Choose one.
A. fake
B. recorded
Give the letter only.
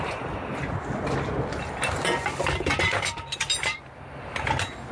B